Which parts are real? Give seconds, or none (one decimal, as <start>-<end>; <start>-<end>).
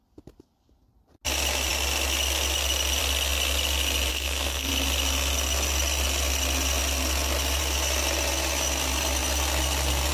0.0-4.1; 4.7-10.1